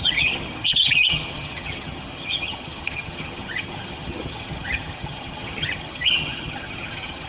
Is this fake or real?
fake